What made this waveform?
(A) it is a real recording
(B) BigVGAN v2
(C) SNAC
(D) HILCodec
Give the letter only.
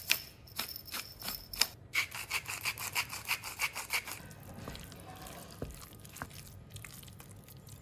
A